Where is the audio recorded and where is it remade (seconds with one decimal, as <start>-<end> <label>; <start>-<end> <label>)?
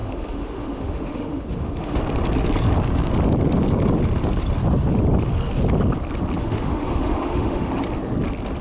0.0-2.0 remade; 2.0-6.4 recorded; 6.4-7.7 remade; 7.7-8.6 recorded